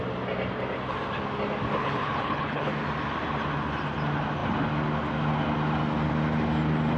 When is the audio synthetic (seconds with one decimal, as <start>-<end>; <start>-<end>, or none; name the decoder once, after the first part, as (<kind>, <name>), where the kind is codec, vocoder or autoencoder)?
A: 1.8-2.7 (codec, HILCodec)